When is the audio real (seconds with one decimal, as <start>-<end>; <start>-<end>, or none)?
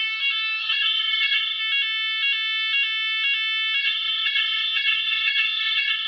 0.0-0.6; 1.6-3.8